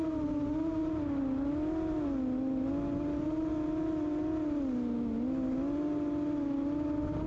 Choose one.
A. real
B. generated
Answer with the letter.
A